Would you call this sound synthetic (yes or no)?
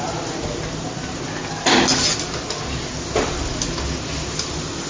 no